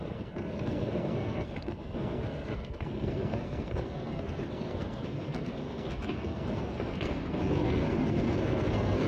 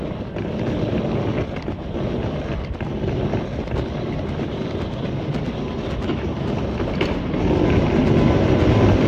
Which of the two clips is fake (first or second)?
first